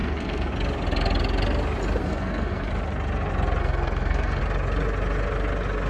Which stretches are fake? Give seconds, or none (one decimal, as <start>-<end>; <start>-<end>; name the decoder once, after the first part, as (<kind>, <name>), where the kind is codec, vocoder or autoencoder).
0.0-0.5 (codec, SNAC); 2.0-2.7; 3.6-4.4